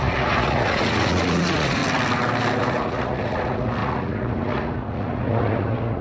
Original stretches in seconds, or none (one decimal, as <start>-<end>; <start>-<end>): 1.8-2.6